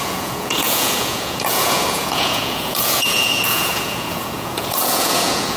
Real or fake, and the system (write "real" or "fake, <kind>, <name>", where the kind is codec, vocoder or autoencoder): fake, vocoder, Vocos